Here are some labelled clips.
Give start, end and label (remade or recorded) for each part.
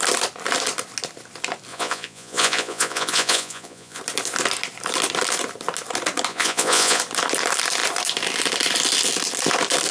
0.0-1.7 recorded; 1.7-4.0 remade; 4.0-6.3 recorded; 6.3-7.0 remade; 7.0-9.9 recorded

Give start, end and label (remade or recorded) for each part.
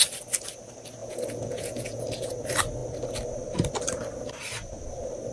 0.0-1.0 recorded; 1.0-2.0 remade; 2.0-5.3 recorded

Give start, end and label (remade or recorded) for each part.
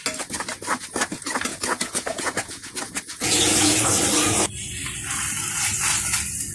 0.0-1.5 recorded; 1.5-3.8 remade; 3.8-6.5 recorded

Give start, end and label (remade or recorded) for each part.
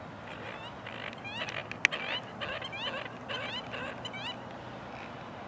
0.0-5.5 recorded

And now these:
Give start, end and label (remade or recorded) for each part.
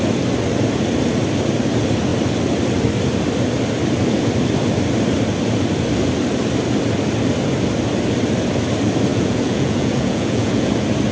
0.0-9.1 recorded; 9.1-10.7 remade; 10.7-11.1 recorded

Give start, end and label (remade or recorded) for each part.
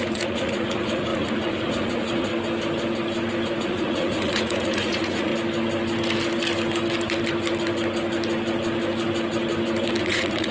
0.0-2.3 remade; 2.3-3.6 recorded; 3.6-5.3 remade; 5.3-10.0 recorded; 10.0-10.5 remade